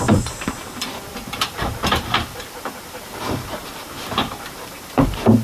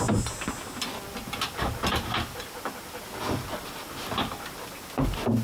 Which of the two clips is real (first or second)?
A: second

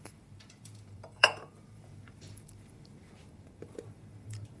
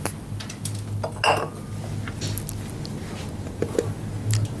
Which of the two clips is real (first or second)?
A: second